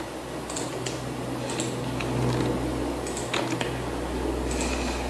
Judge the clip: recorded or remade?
recorded